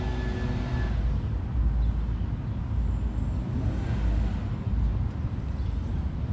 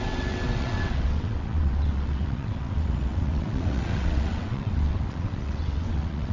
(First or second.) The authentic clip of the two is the first